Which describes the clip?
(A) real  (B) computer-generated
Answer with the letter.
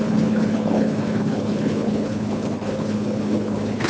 B